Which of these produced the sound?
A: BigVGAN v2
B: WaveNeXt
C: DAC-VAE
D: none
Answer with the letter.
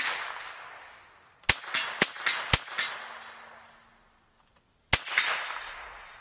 D